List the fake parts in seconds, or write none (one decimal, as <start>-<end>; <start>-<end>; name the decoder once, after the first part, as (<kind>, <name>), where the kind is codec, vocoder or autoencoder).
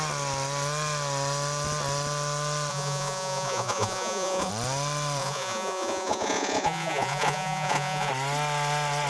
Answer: 2.7-4.5 (vocoder, Vocos); 5.2-8.1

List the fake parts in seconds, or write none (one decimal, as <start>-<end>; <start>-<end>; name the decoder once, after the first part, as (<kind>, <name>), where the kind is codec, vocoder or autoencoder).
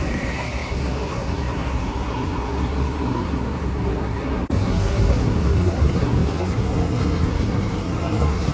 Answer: 0.0-8.5 (codec, SNAC)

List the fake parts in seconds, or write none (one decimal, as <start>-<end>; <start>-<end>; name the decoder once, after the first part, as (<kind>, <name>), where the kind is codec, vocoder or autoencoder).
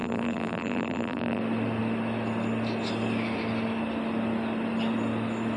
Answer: 0.0-1.4 (vocoder, BigVGAN v2)